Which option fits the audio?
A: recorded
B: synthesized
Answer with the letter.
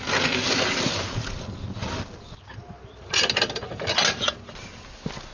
A